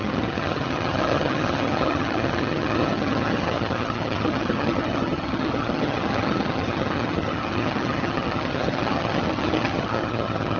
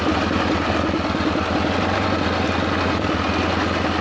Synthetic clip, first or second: first